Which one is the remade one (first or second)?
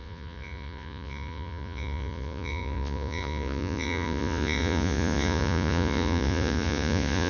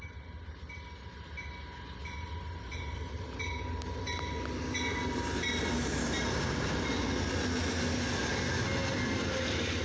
first